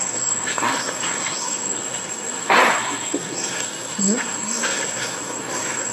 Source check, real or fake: fake